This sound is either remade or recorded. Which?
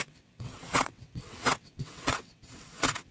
remade